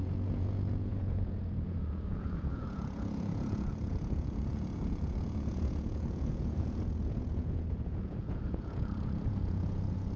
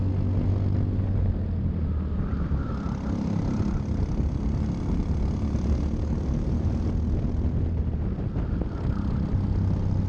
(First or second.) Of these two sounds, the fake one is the first